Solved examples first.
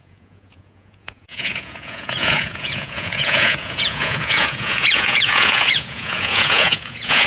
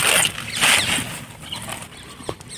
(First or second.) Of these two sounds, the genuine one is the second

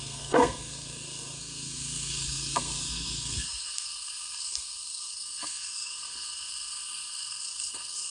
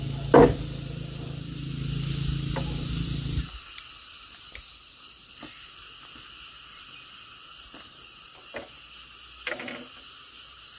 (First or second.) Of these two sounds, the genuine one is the second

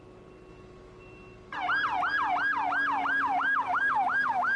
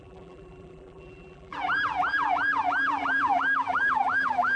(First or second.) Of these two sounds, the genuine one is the first